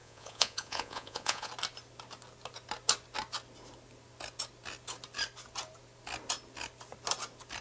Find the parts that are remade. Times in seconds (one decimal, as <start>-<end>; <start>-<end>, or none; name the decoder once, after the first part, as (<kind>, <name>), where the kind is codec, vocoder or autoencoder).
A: 0.0-1.5 (vocoder, Vocos)